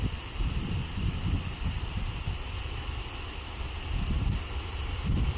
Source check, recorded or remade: remade